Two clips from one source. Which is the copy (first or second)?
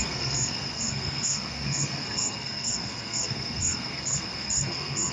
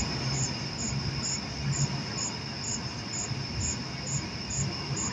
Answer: first